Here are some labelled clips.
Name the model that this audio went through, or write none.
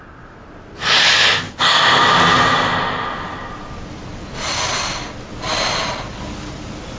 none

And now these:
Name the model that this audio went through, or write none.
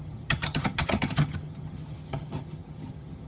vocoder, HiFi-GAN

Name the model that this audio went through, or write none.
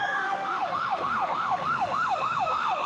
autoencoder, DAC-VAE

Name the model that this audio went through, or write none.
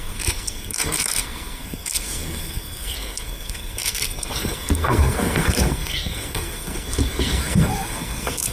codec, SNAC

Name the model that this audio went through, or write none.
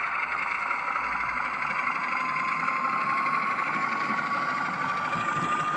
none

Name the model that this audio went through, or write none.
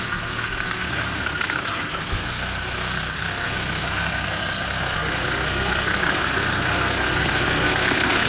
codec, SNAC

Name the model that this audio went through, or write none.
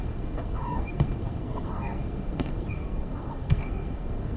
codec, SNAC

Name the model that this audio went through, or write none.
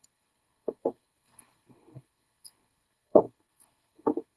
codec, SNAC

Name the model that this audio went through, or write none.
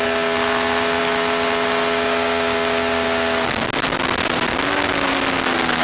none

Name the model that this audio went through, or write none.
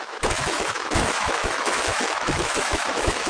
autoencoder, DAC-VAE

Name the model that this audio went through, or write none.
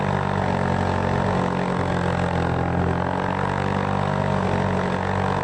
none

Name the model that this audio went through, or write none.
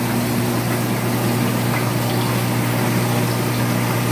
none